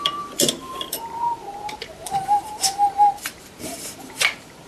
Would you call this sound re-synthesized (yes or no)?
yes